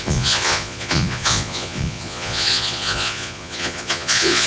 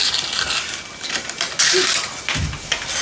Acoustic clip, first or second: second